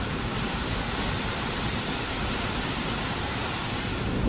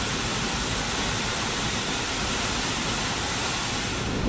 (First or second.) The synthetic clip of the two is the first